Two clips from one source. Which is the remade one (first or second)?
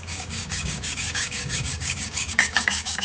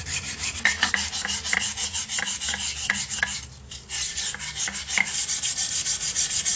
first